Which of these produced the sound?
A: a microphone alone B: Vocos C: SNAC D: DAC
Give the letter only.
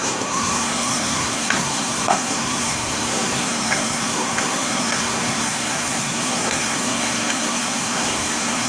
C